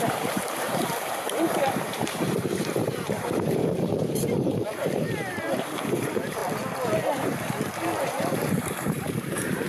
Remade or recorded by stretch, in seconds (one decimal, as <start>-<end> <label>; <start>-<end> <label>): 0.0-6.4 remade; 6.4-8.0 recorded; 8.0-9.7 remade